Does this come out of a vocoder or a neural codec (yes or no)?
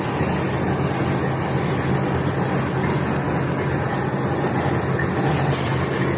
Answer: no